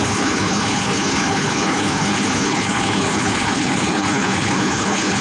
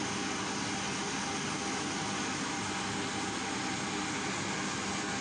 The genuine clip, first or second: second